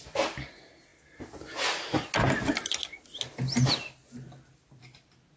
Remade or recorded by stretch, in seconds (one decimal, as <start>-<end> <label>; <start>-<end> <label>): 0.0-5.4 recorded